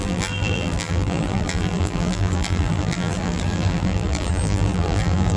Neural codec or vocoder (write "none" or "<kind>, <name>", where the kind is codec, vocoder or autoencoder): vocoder, BigVGAN v2